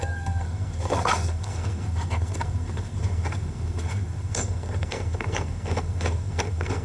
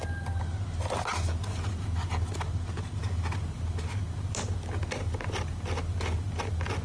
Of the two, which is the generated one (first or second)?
first